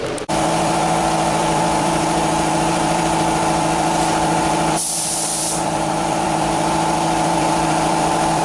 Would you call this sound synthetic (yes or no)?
yes